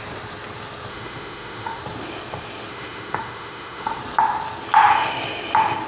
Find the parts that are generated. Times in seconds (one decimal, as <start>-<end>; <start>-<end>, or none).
0.9-1.8; 2.7-4.0